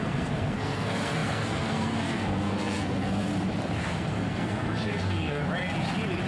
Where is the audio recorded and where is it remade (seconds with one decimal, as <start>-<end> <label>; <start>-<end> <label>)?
0.0-3.3 remade; 3.3-3.8 recorded; 3.8-5.4 remade; 5.4-6.3 recorded